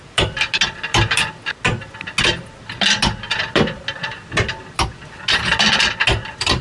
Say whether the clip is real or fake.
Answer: real